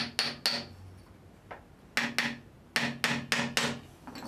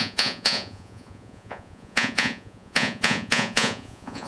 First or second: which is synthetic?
second